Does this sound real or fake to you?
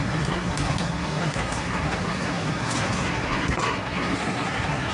fake